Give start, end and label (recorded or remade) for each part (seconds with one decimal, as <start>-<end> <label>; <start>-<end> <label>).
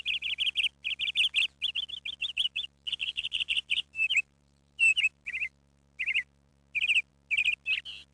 0.0-2.2 recorded; 2.2-5.3 remade; 5.3-8.1 recorded